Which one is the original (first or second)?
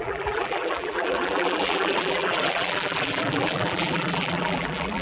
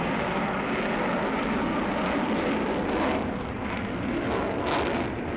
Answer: second